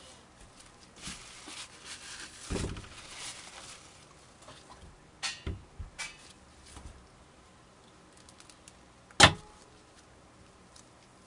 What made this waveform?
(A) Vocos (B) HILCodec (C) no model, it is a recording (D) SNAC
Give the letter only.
C